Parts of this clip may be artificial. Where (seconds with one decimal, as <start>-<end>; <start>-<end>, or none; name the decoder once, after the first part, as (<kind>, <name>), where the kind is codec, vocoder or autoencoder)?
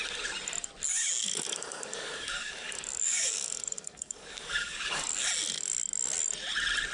1.2-5.3 (codec, DAC)